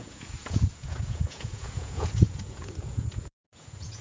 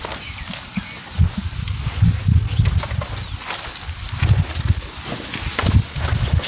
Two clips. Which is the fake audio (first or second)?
first